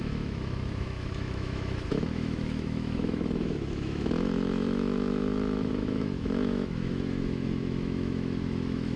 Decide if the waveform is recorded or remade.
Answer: remade